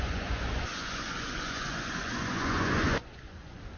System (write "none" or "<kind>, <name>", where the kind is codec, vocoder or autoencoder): vocoder, Vocos